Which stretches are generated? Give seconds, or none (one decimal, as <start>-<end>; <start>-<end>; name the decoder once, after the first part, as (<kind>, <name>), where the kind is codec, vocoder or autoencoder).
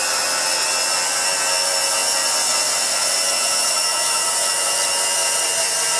none